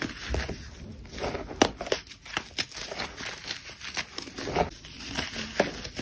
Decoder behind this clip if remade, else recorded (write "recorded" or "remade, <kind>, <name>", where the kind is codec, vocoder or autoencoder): recorded